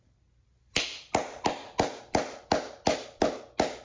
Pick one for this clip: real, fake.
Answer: real